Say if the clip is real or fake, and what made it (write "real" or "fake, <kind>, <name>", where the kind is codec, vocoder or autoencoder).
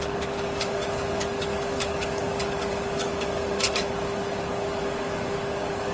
fake, codec, DAC